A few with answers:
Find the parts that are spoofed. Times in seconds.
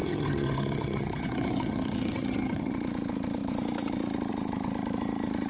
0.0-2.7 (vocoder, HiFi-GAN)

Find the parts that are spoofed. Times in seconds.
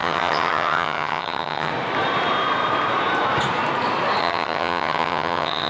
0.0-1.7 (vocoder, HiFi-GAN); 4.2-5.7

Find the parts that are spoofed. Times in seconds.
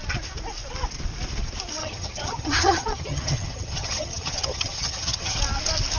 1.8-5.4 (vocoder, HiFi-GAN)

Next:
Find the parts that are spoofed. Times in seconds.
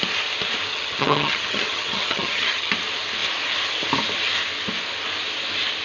0.7-2.7 (vocoder, HiFi-GAN)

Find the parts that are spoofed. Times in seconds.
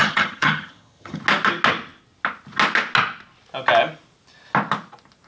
0.0-1.2 (vocoder, HiFi-GAN)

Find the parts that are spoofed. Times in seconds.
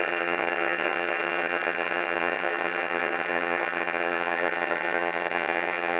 0.0-6.0 (vocoder, HiFi-GAN)